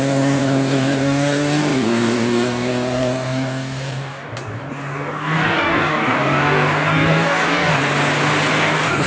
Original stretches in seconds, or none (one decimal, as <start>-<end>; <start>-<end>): 7.8-8.6